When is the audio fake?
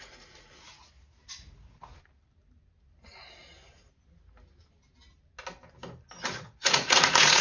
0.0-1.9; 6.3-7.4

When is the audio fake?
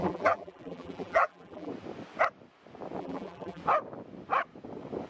0.0-1.7; 3.0-3.6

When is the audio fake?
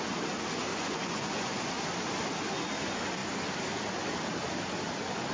0.7-1.7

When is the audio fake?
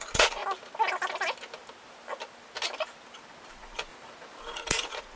0.0-0.4; 3.5-3.9; 4.4-5.2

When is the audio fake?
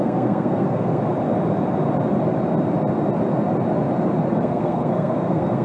0.0-1.0; 4.4-5.6